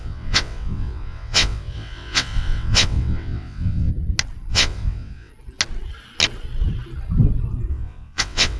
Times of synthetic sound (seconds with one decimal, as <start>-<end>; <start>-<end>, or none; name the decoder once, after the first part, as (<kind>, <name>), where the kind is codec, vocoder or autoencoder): 0.0-3.9 (vocoder, WaveNeXt); 4.5-5.3; 7.7-8.6